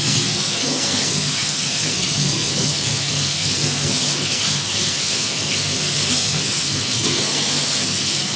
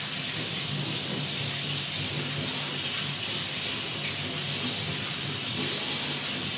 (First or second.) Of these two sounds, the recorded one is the second